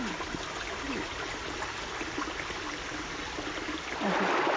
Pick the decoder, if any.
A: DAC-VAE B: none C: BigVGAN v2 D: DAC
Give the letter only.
B